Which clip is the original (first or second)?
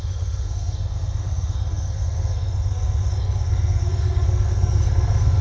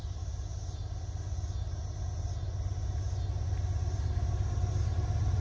second